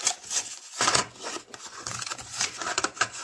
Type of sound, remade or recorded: remade